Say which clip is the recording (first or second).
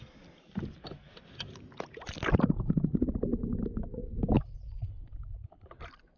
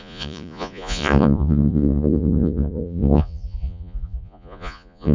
first